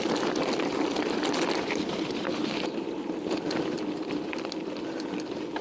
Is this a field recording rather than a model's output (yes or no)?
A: yes